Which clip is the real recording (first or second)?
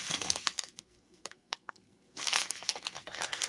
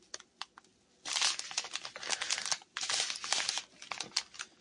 second